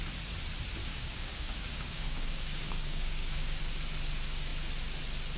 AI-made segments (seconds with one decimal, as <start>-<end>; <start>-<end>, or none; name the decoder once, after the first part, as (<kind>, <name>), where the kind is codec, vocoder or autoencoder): 0.8-3.6 (codec, DAC)